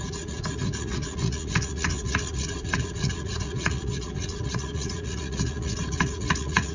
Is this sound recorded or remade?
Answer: remade